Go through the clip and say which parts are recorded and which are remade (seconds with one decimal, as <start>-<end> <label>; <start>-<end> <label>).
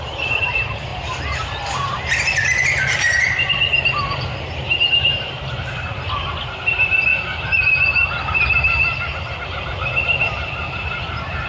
0.0-0.9 remade; 0.9-1.7 recorded; 1.7-7.1 remade; 7.1-9.4 recorded; 9.4-11.5 remade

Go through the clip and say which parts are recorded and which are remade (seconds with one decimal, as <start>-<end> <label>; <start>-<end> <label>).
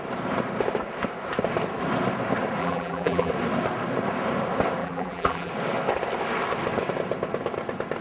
0.0-2.6 recorded; 2.6-3.3 remade; 3.3-4.8 recorded; 4.8-5.5 remade; 5.5-8.0 recorded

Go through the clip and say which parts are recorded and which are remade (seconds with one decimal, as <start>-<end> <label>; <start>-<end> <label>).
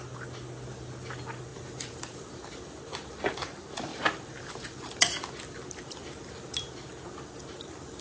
0.0-1.5 recorded; 1.5-2.8 remade; 2.8-3.9 recorded; 3.9-4.5 remade; 4.5-8.0 recorded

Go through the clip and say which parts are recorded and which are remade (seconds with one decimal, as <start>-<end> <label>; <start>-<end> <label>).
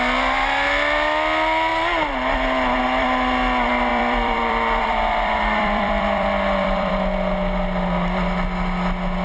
0.0-3.9 recorded; 3.9-6.9 remade; 6.9-9.2 recorded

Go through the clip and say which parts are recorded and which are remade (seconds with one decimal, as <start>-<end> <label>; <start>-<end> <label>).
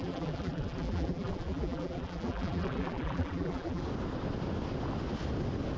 0.0-3.8 remade; 3.8-5.8 recorded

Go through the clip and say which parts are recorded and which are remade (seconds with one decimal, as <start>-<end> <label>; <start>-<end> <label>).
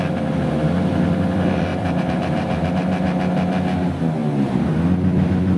0.0-1.7 recorded; 1.7-2.5 remade; 2.5-5.6 recorded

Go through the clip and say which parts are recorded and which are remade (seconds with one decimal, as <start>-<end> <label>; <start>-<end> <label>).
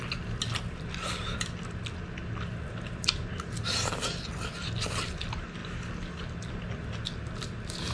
0.0-7.9 recorded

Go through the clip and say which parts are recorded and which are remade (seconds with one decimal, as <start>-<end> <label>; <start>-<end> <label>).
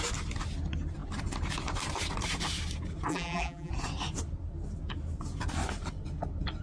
0.0-3.1 recorded; 3.1-3.7 remade; 3.7-6.6 recorded